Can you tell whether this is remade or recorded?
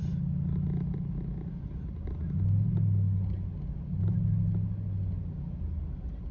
recorded